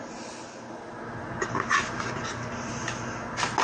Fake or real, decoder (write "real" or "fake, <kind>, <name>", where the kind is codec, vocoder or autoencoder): real